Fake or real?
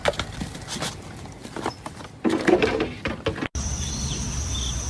real